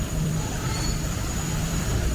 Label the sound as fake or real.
fake